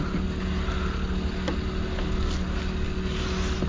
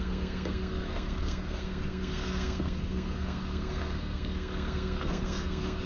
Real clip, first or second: first